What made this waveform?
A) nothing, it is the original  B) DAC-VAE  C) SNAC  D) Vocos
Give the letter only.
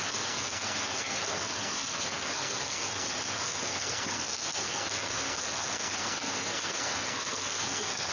C